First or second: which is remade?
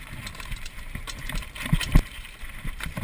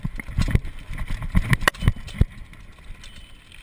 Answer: first